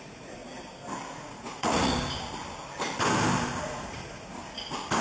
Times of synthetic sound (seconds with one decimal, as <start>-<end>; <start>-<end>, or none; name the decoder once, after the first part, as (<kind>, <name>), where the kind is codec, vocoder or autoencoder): 0.0-0.4 (vocoder, Vocos); 1.1-1.9; 3.6-4.4